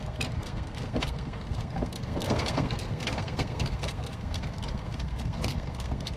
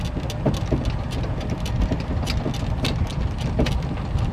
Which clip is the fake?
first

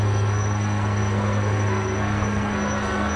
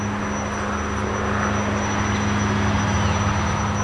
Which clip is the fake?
first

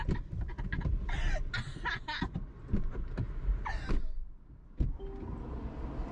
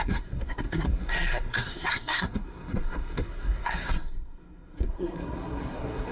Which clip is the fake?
second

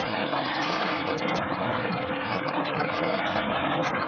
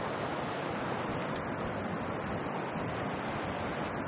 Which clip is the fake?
first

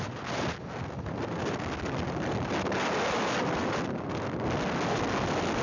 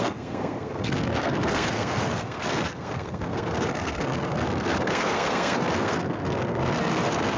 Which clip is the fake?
second